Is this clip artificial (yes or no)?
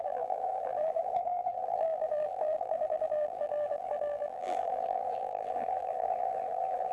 yes